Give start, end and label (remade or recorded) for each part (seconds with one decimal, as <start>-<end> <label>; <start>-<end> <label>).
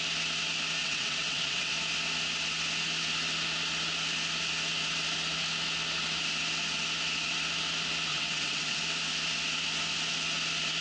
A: 0.0-0.8 recorded; 0.8-1.7 remade; 1.7-8.1 recorded; 8.1-8.8 remade; 8.8-10.8 recorded